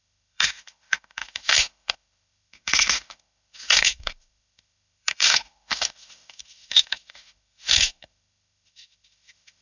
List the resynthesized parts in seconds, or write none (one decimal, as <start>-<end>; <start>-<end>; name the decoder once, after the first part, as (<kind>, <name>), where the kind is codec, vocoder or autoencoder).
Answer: 0.0-9.6 (autoencoder, DAC-VAE)